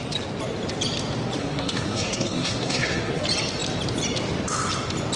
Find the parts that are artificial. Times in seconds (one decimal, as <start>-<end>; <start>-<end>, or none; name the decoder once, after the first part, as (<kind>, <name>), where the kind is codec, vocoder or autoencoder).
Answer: 1.4-3.2 (codec, SNAC)